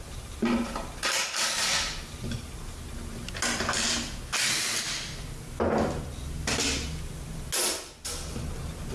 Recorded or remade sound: recorded